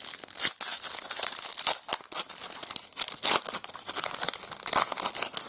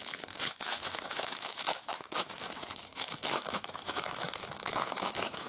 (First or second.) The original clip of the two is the first